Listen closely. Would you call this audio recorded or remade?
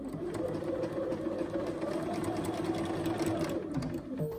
recorded